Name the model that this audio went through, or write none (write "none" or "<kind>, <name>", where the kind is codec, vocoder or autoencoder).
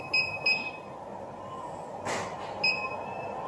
none